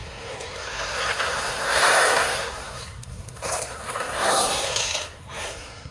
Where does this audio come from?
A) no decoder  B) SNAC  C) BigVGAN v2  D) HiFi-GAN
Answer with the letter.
B